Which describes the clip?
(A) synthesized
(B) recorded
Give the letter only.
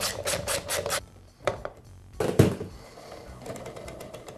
A